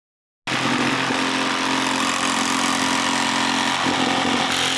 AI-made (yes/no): no